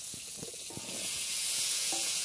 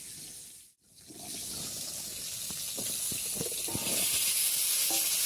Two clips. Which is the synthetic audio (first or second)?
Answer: first